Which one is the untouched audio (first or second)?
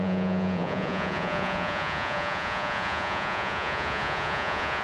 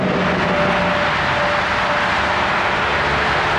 second